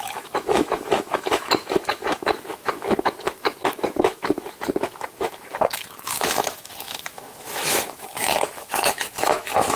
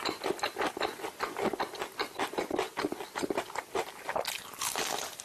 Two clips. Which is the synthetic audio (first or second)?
first